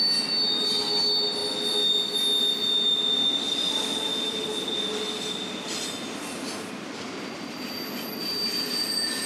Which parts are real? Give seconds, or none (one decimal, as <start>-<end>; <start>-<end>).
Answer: 0.0-9.3